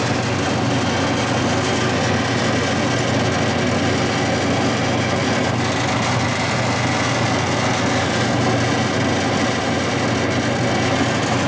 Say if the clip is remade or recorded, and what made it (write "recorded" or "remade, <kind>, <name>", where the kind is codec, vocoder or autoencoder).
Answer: recorded